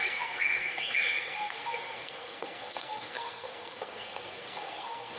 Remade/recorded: remade